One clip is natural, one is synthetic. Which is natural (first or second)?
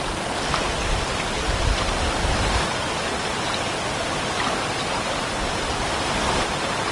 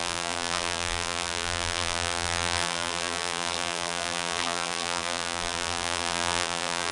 first